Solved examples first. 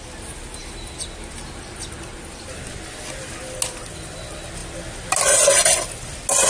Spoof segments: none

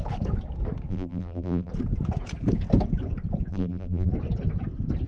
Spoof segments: 0.9-1.7 (vocoder, BigVGAN v2); 3.5-4.1

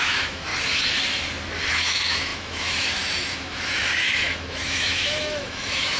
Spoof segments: 0.0-0.5 (autoencoder, DAC-VAE); 1.7-6.0

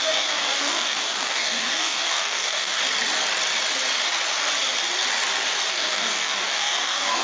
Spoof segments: 0.0-2.8 (codec, DAC); 5.7-7.2

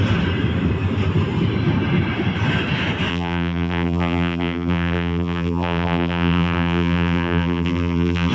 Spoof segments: 3.1-8.3 (vocoder, BigVGAN v2)

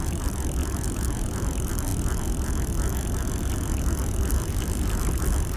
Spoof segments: 0.0-0.6 (vocoder, BigVGAN v2); 1.4-1.9

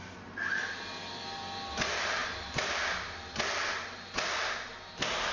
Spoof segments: none

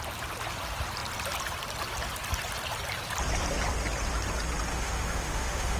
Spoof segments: 4.7-5.8 (autoencoder, DAC-VAE)